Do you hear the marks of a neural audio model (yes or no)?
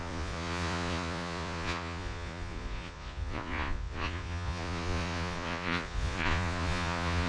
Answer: yes